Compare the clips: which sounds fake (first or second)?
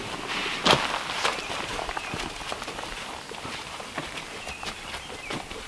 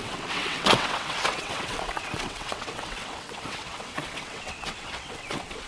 second